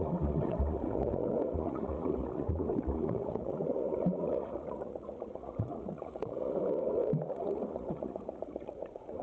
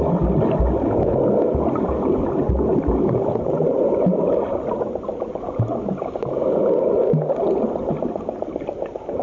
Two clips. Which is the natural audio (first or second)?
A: second